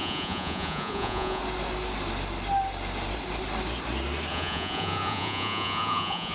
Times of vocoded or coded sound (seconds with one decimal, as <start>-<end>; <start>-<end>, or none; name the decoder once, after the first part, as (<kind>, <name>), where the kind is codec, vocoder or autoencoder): 0.0-1.4 (vocoder, Vocos); 4.3-6.3